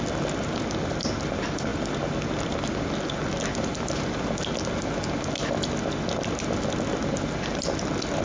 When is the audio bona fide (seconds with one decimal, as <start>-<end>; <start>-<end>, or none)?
0.0-8.2